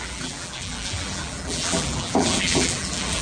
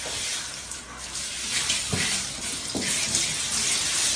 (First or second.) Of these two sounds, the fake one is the first